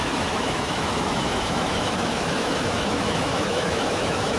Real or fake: fake